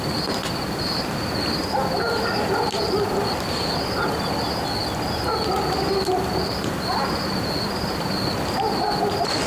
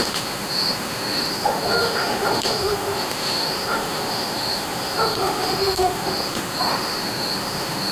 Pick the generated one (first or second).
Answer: second